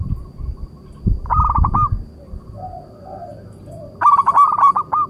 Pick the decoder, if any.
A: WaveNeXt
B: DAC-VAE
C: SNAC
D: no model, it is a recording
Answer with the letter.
D